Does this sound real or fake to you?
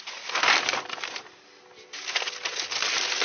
real